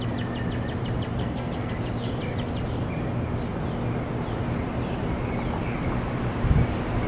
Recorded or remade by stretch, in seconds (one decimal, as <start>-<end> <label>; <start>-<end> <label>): 0.0-1.2 recorded; 1.2-1.7 remade; 1.7-7.1 recorded